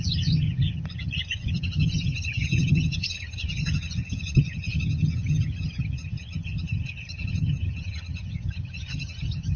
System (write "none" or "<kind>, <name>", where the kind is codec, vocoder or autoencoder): vocoder, HiFi-GAN